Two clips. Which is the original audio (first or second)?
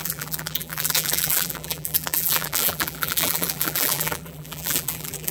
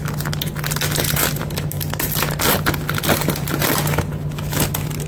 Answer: second